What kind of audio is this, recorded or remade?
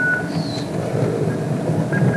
recorded